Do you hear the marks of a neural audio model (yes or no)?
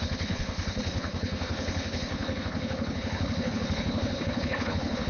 yes